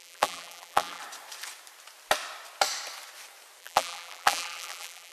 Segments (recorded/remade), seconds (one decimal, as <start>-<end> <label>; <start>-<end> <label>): 0.0-1.0 remade; 1.0-3.6 recorded; 3.6-5.1 remade